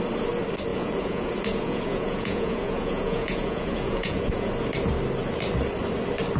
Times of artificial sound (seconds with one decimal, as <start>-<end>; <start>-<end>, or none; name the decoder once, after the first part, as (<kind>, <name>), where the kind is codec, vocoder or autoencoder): 0.7-4.5 (vocoder, Vocos)